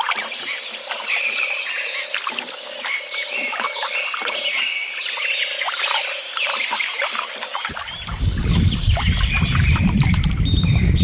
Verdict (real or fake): fake